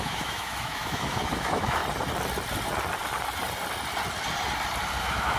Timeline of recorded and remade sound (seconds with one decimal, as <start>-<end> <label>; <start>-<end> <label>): 0.0-1.8 remade; 1.8-5.0 recorded; 5.0-5.4 remade